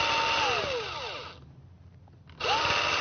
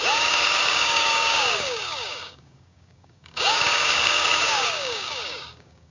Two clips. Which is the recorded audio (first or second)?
first